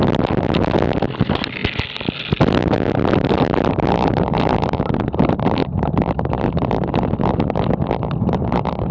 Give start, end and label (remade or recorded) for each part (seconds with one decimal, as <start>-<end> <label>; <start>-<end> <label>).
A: 0.0-1.6 recorded; 1.6-5.0 remade; 5.0-8.9 recorded